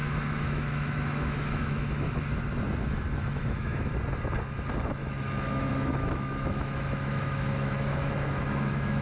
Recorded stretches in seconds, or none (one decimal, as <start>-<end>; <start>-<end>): 2.2-3.2; 3.9-5.0